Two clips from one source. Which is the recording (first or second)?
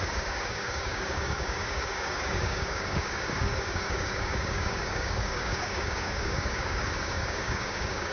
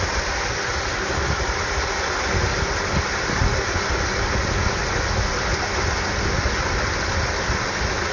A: second